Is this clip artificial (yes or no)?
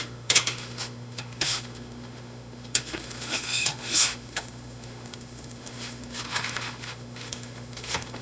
yes